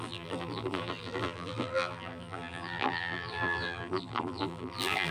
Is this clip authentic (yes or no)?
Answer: no